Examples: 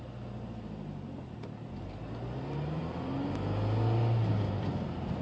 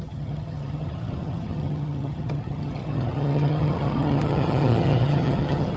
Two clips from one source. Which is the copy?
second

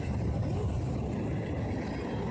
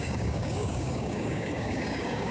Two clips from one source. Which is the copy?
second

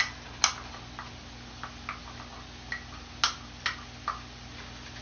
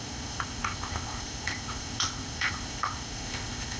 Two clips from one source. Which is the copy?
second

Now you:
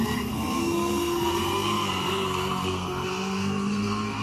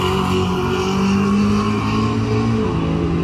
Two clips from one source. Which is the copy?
first